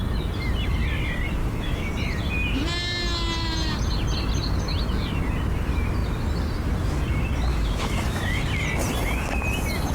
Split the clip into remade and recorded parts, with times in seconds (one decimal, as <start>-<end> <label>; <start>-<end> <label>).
0.0-1.4 recorded; 1.4-1.9 remade; 1.9-7.5 recorded; 7.5-8.4 remade; 8.4-9.9 recorded